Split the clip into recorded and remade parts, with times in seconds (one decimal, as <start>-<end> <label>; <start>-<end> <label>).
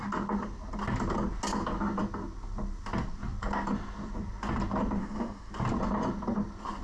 0.0-5.0 recorded; 5.0-5.5 remade; 5.5-6.8 recorded